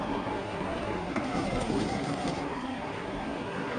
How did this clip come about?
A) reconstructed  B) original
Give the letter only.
A